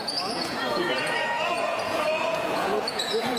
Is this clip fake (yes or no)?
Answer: yes